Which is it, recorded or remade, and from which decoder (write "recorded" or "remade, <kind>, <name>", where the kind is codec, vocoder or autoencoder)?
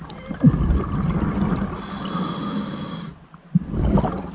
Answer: recorded